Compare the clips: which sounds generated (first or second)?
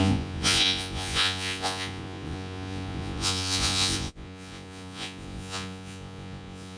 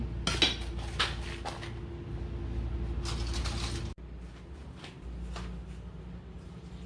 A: first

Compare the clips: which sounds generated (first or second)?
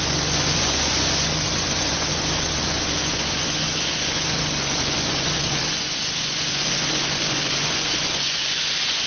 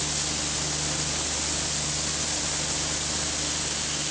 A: first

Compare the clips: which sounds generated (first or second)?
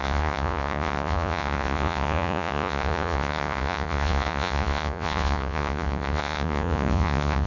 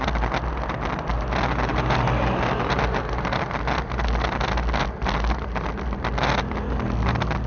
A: first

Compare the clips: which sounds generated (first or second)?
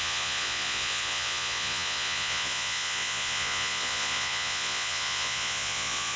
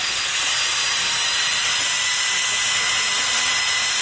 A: first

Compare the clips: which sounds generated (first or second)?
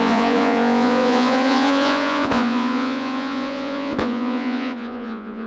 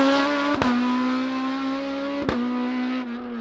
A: first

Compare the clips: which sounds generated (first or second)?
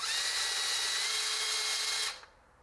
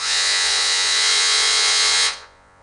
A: second